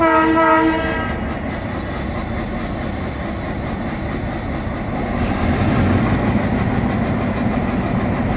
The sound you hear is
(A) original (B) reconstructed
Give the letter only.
A